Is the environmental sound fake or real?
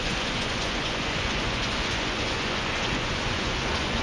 fake